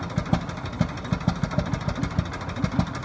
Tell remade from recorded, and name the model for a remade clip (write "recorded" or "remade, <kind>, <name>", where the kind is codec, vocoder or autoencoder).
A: recorded